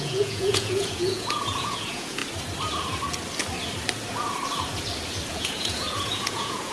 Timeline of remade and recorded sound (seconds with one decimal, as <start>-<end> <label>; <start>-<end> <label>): 0.0-2.2 remade; 2.2-5.3 recorded; 5.3-6.7 remade